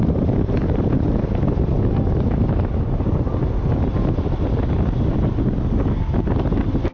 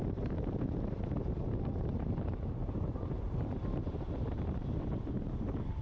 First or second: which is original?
first